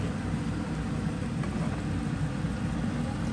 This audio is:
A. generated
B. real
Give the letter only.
B